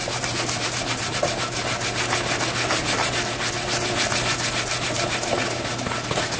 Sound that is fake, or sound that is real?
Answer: real